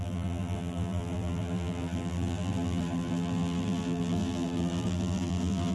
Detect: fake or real fake